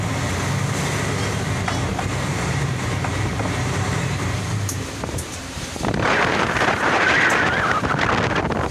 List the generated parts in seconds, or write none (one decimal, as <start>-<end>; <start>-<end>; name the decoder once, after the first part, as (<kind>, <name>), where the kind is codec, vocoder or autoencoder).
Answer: 1.9-7.1 (vocoder, BigVGAN v2)